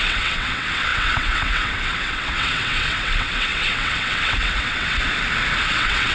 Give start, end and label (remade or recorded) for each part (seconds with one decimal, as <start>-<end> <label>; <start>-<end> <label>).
0.0-5.0 remade; 5.0-5.6 recorded; 5.6-6.1 remade

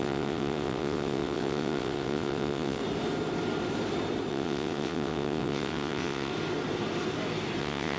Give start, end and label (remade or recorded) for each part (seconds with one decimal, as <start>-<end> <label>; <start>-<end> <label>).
0.0-2.8 remade; 2.8-4.3 recorded; 4.3-6.3 remade; 6.3-7.6 recorded; 7.6-8.0 remade

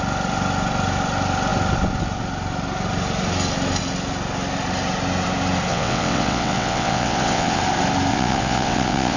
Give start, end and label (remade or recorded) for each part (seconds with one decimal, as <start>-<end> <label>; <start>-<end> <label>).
0.0-5.7 recorded; 5.7-7.6 remade; 7.6-8.1 recorded; 8.1-9.2 remade

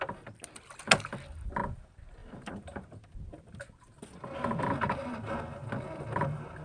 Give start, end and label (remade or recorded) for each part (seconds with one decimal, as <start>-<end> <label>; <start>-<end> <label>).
0.0-6.6 recorded

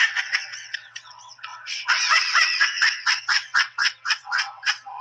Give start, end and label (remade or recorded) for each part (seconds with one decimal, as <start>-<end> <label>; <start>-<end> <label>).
0.0-5.0 remade

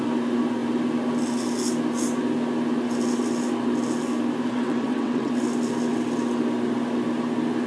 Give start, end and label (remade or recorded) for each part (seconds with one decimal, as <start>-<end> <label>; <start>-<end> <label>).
0.0-4.5 recorded; 4.5-5.3 remade; 5.3-7.7 recorded